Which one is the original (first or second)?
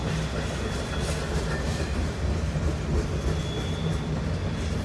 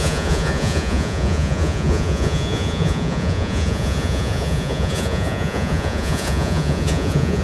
first